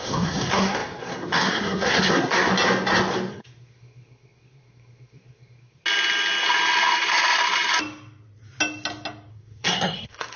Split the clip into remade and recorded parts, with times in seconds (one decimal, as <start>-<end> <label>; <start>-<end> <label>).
0.0-2.5 remade; 2.5-3.3 recorded; 3.3-5.8 remade; 5.8-9.3 recorded; 9.3-10.4 remade